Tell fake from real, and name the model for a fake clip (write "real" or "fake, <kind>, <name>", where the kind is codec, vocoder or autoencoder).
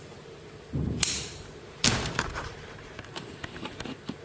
fake, vocoder, BigVGAN v2